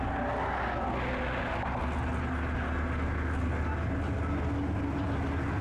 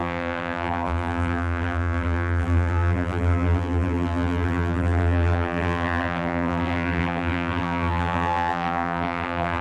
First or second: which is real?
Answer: first